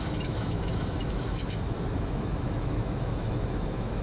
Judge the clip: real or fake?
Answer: fake